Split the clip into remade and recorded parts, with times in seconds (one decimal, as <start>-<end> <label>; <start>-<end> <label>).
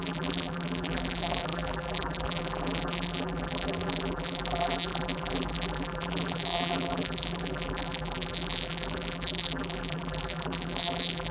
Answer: 0.0-11.3 remade